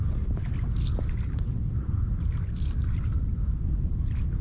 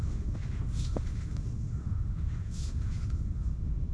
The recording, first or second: first